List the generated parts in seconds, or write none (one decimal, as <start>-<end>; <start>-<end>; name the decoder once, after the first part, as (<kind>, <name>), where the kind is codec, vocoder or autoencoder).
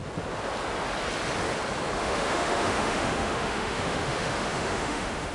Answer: 2.0-5.3 (autoencoder, DAC-VAE)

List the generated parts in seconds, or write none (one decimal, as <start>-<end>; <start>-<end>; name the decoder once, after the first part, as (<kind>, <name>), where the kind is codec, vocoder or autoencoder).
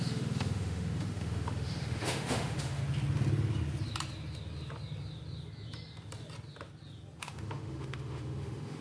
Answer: 0.0-2.8 (autoencoder, DAC-VAE); 7.2-8.8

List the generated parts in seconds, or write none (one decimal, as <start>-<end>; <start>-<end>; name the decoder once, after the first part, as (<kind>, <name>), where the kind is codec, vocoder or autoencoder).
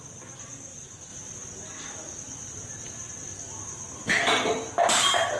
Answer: none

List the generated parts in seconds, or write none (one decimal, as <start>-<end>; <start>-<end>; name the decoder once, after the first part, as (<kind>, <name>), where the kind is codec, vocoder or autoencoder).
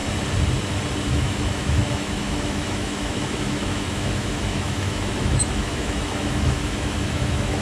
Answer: 1.1-7.6 (autoencoder, DAC-VAE)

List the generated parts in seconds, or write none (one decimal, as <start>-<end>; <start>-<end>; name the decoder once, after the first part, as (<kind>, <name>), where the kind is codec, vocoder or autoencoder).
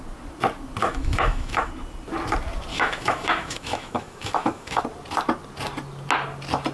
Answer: 0.8-1.7 (autoencoder, DAC-VAE); 2.7-4.8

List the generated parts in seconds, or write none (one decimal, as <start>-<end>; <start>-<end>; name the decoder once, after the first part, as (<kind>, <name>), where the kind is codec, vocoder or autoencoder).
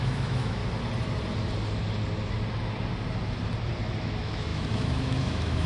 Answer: 0.0-0.6 (autoencoder, DAC-VAE); 4.0-5.7